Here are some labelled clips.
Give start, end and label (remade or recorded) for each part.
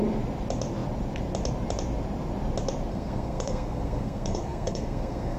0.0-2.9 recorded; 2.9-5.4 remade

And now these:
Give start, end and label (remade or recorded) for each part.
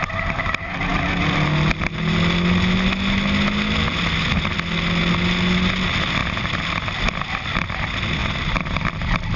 0.0-9.4 recorded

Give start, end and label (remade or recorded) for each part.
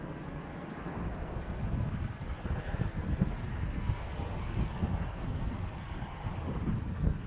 0.0-6.3 remade; 6.3-6.8 recorded; 6.8-7.3 remade